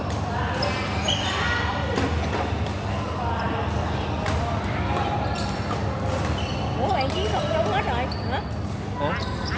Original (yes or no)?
yes